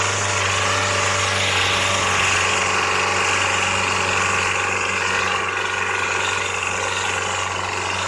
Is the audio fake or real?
real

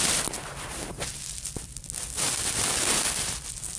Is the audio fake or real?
real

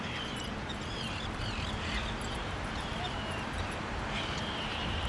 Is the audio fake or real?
fake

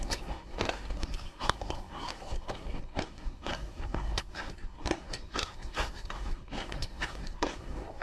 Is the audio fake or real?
fake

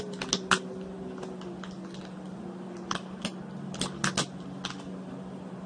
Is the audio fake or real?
real